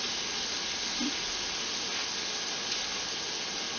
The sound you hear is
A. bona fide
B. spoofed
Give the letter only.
A